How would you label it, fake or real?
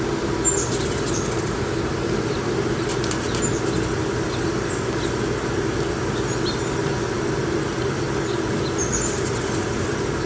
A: real